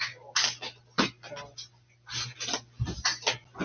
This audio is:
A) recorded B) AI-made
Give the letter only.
A